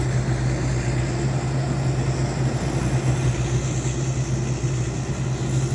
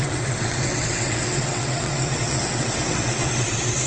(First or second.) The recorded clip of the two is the first